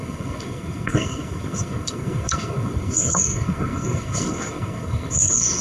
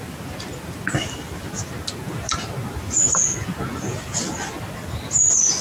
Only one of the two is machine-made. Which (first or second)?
first